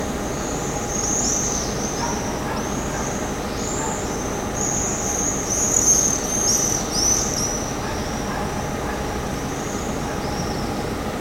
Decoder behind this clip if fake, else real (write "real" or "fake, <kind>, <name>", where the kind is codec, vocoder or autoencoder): real